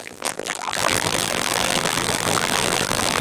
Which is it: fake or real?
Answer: fake